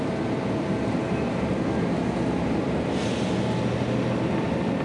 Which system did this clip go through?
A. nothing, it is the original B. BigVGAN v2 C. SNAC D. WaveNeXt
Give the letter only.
A